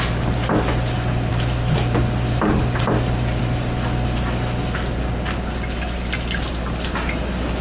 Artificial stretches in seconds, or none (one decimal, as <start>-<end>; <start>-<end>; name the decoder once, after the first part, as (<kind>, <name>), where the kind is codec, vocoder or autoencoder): none